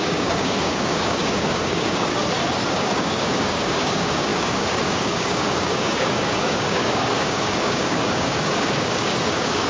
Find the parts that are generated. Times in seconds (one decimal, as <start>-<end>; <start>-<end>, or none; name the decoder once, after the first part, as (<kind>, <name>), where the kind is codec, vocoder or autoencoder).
0.0-2.1 (codec, DAC); 2.7-9.7